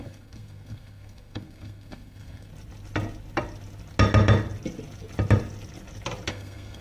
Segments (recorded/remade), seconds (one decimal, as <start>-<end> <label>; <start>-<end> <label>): 0.0-2.5 remade; 2.5-6.3 recorded; 6.3-6.8 remade